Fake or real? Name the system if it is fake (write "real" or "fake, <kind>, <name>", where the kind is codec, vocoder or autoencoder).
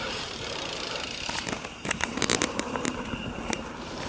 fake, vocoder, BigVGAN v2